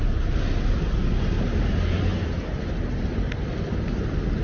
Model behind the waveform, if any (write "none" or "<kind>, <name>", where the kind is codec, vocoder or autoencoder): none